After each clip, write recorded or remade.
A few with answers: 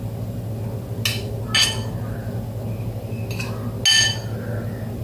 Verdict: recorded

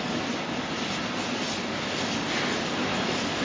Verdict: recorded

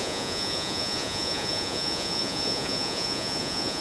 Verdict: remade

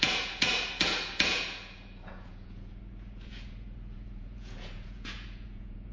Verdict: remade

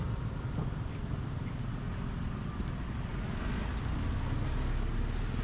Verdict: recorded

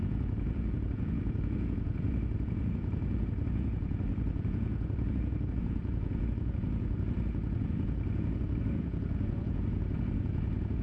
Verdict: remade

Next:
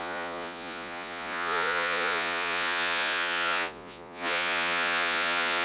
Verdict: remade